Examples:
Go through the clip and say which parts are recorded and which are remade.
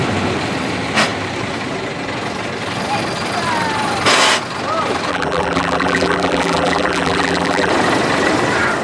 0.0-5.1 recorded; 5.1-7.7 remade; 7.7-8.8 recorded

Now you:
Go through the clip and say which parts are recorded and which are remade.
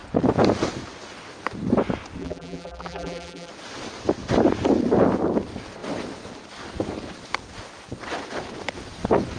0.0-2.2 recorded; 2.2-3.5 remade; 3.5-9.4 recorded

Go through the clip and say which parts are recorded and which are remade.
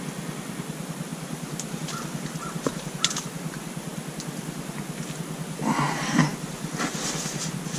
0.0-1.1 recorded; 1.1-2.9 remade; 2.9-7.8 recorded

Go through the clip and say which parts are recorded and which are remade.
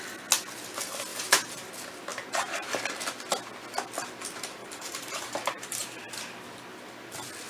0.0-1.1 recorded; 1.1-1.7 remade; 1.7-2.1 recorded; 2.1-2.8 remade; 2.8-4.6 recorded; 4.6-5.8 remade; 5.8-7.5 recorded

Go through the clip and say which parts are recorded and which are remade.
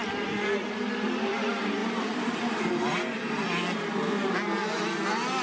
0.0-1.8 recorded; 1.8-2.7 remade; 2.7-5.4 recorded